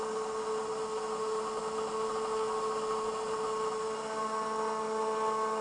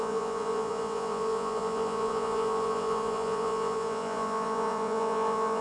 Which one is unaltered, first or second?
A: first